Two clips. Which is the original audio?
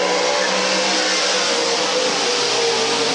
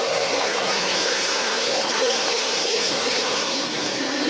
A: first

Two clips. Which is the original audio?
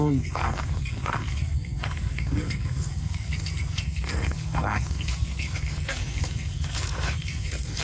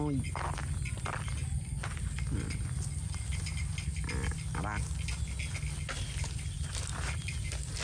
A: second